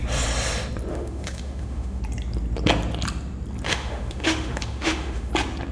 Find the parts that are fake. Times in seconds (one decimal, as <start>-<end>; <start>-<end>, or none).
0.9-2.0; 3.7-5.3